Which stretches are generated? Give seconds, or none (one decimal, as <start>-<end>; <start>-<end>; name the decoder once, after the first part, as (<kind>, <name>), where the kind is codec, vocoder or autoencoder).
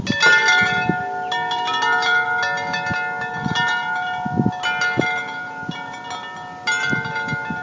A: none